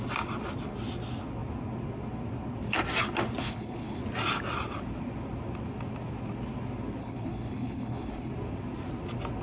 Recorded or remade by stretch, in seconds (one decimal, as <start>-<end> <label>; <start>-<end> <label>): 0.0-3.4 recorded; 3.4-4.0 remade; 4.0-7.0 recorded; 7.0-8.3 remade; 8.3-9.4 recorded